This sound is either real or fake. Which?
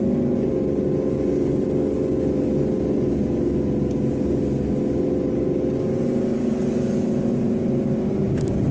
real